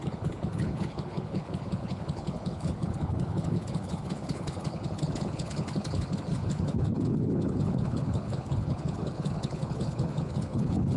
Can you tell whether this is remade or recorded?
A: remade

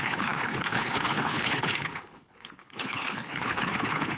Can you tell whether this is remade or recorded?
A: remade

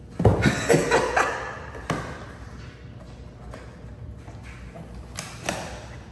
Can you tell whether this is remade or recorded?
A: recorded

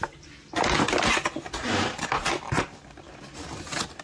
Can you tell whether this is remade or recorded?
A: recorded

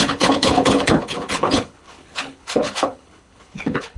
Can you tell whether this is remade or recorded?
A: remade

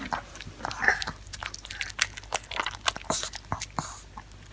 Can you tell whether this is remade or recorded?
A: recorded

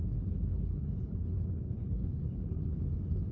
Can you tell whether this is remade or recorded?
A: remade